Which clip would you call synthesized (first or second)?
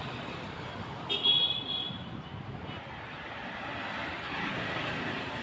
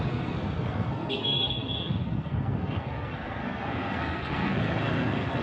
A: second